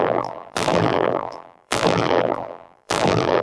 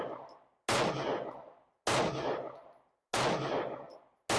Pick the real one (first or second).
second